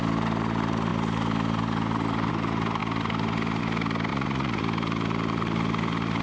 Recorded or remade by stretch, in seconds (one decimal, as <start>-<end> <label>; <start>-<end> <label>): 0.0-4.1 recorded; 4.1-4.6 remade; 4.6-6.2 recorded

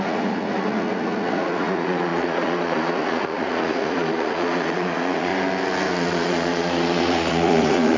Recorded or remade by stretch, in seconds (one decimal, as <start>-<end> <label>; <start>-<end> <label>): 0.0-5.3 remade; 5.3-5.9 recorded; 5.9-8.0 remade

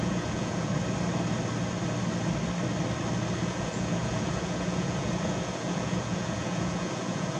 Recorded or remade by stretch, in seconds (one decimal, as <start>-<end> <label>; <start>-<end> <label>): 0.0-0.7 remade; 0.7-3.4 recorded; 3.4-7.4 remade

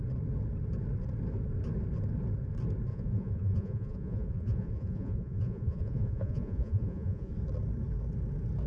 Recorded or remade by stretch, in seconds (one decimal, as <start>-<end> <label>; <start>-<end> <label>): 0.0-2.9 recorded; 2.9-7.3 remade; 7.3-8.7 recorded